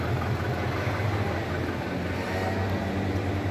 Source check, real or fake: real